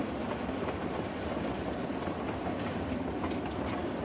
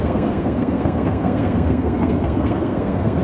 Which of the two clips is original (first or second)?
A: first